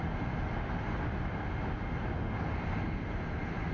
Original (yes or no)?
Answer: yes